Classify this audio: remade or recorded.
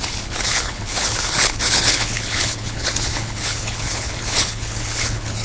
remade